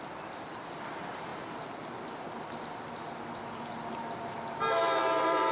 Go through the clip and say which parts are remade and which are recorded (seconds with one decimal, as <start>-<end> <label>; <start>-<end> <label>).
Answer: 0.0-1.3 remade; 1.3-4.6 recorded; 4.6-5.5 remade

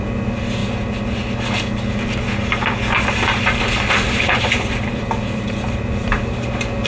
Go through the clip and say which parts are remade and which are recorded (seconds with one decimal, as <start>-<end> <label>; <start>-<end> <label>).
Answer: 0.0-0.6 remade; 0.6-3.9 recorded; 3.9-6.9 remade